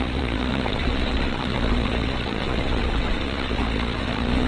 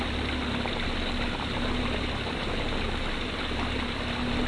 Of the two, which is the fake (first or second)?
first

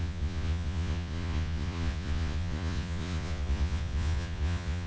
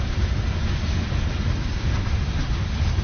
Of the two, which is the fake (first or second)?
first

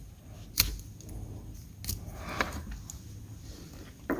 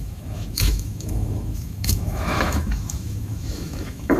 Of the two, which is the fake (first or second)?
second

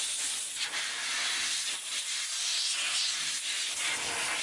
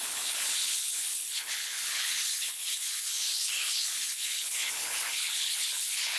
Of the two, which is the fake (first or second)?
second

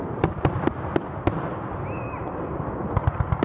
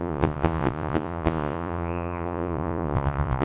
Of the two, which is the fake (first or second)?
second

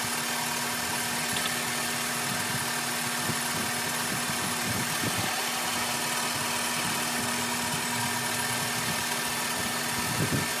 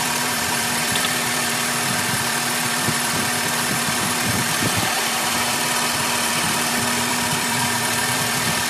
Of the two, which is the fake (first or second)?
second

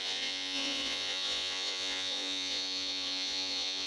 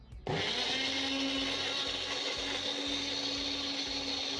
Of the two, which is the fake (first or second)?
first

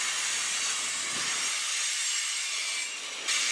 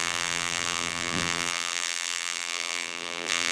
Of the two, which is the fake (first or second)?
second